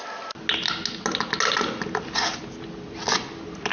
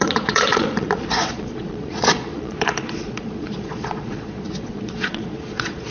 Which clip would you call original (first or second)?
first